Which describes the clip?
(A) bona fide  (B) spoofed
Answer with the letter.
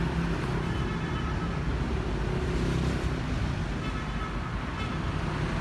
A